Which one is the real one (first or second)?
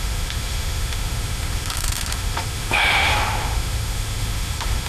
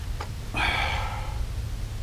second